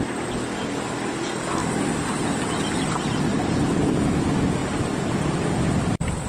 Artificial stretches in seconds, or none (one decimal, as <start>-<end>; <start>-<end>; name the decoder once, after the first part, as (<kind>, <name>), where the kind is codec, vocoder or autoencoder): 1.6-2.2 (vocoder, BigVGAN v2); 3.3-3.8; 4.6-5.3